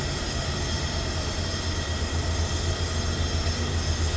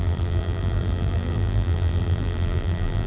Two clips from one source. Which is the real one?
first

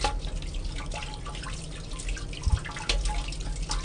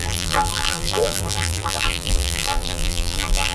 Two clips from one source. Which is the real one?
first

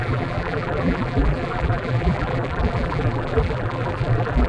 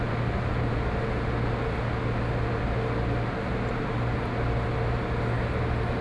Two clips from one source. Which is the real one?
second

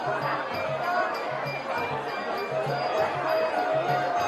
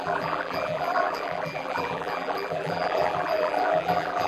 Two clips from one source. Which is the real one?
first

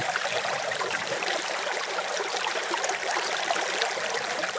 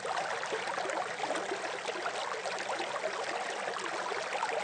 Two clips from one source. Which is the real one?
second